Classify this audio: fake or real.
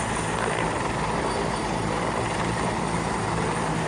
fake